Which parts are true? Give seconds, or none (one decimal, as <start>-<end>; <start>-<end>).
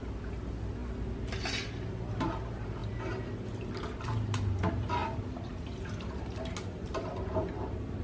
0.0-8.0